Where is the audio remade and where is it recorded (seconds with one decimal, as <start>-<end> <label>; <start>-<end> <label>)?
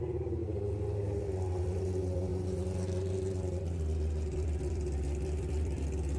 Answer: 0.0-2.3 recorded; 2.3-5.8 remade; 5.8-6.2 recorded